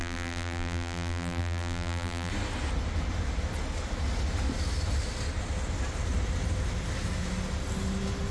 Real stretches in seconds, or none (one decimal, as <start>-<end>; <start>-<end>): 2.3-8.3